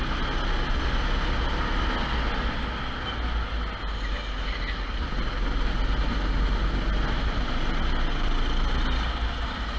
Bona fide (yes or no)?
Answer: yes